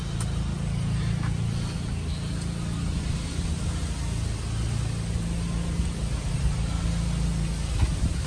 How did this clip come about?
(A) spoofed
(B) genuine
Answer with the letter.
B